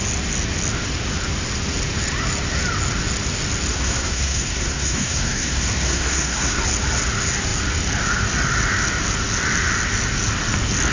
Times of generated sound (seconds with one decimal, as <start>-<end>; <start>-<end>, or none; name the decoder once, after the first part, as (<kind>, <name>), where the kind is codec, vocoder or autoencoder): 3.7-6.6 (codec, SNAC)